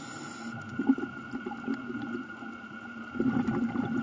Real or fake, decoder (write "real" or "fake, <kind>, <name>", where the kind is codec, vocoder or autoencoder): real